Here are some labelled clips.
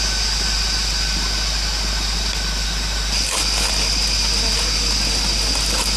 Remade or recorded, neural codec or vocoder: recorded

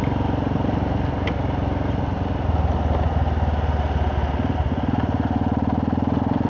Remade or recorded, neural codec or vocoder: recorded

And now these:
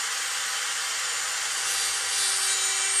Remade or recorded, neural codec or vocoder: recorded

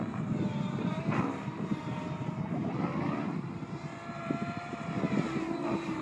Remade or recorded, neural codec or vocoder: remade, vocoder, BigVGAN v2